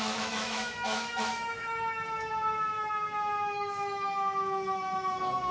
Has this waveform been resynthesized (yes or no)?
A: yes